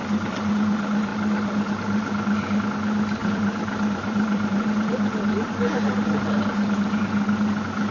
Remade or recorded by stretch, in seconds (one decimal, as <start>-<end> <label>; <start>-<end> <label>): 0.0-3.2 recorded; 3.2-7.0 remade; 7.0-7.9 recorded